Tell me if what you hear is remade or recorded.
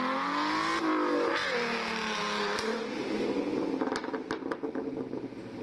recorded